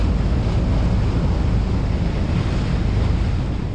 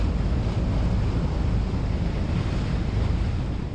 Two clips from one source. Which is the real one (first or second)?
first